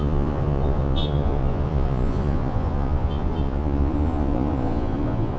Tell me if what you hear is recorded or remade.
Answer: remade